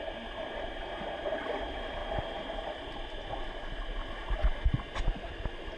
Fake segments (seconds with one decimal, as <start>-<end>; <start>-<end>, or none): none